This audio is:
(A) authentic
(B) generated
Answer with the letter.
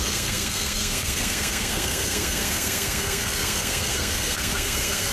B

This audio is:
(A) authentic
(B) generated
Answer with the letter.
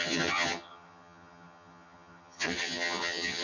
B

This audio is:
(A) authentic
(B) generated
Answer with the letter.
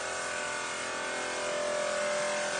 A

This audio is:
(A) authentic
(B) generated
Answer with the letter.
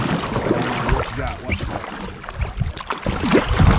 A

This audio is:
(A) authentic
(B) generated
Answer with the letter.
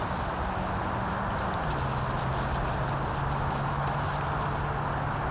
A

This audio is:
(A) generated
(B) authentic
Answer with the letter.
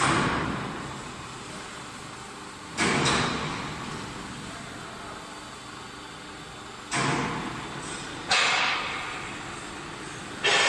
B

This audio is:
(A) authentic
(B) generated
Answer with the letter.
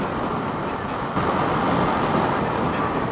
A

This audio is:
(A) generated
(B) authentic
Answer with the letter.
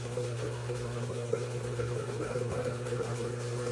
A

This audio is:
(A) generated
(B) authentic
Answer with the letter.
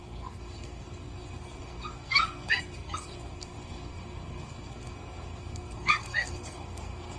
A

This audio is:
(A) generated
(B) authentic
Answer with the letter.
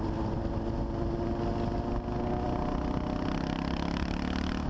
B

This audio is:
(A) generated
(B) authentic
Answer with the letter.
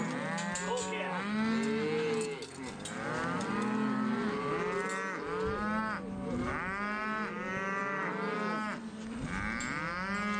B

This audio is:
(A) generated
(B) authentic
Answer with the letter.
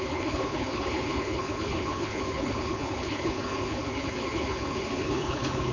A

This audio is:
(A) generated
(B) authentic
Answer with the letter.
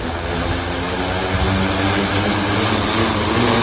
B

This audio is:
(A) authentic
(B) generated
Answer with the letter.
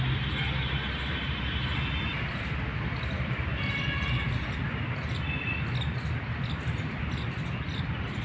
A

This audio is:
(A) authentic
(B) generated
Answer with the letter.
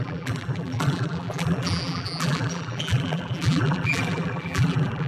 B